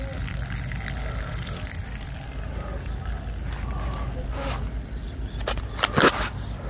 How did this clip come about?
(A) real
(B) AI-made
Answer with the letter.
A